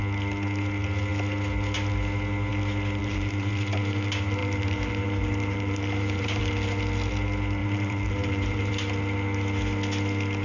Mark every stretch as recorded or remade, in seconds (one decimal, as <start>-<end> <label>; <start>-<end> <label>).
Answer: 0.0-3.0 recorded; 3.0-3.5 remade; 3.5-4.4 recorded; 4.4-6.4 remade; 6.4-7.6 recorded; 7.6-8.7 remade; 8.7-10.4 recorded